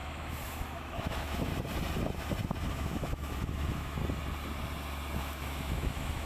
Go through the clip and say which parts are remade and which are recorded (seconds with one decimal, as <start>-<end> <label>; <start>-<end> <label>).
0.0-1.5 remade; 1.5-2.7 recorded; 2.7-4.0 remade; 4.0-5.2 recorded; 5.2-6.3 remade